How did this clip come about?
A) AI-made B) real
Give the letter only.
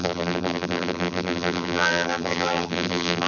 A